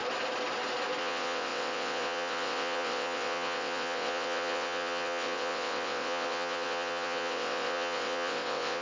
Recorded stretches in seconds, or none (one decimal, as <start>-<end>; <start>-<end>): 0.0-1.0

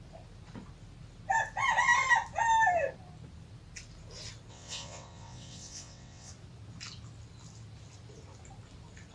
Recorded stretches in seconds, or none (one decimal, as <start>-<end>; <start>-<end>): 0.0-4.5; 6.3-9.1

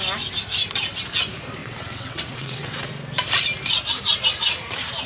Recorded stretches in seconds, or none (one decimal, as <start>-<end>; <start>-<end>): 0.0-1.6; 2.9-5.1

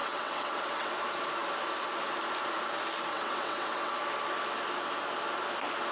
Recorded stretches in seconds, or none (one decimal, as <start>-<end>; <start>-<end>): 0.9-3.1; 3.9-5.9